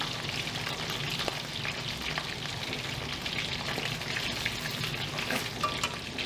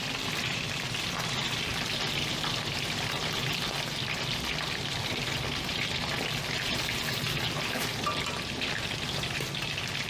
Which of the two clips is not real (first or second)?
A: second